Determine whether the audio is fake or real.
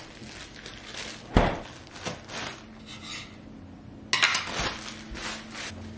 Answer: real